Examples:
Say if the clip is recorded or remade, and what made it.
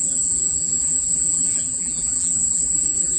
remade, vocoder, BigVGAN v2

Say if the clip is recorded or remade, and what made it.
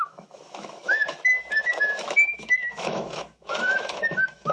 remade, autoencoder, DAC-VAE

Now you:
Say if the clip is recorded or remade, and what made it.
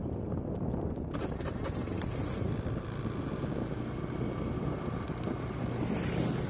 recorded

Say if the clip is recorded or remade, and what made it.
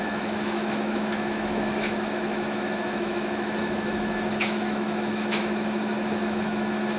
remade, autoencoder, DAC-VAE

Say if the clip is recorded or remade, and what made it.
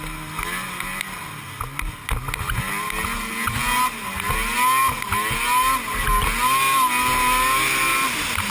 recorded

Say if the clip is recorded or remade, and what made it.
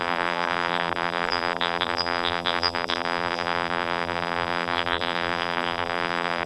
remade, vocoder, BigVGAN v2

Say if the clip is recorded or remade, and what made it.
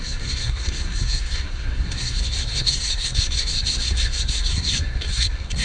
remade, codec, SNAC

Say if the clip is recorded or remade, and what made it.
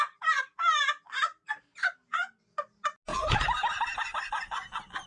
recorded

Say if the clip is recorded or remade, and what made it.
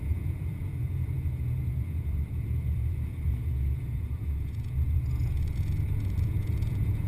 remade, vocoder, Vocos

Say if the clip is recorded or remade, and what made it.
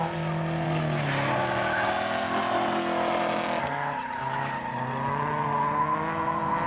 recorded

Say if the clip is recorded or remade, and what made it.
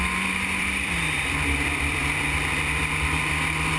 remade, vocoder, BigVGAN v2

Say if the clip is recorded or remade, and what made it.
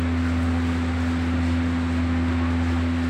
recorded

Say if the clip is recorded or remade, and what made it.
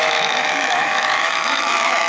remade, autoencoder, DAC-VAE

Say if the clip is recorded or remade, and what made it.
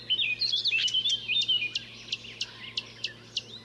recorded